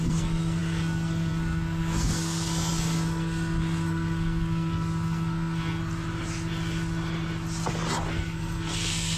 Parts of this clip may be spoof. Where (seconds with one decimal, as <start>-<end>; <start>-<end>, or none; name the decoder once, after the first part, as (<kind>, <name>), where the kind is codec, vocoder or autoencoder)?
0.0-5.8 (codec, SNAC); 8.1-9.2